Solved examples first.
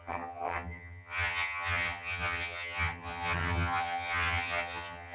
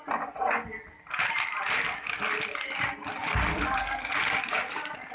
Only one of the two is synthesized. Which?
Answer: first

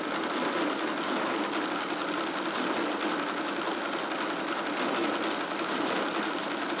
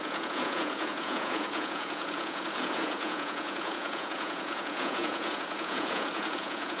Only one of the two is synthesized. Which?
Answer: second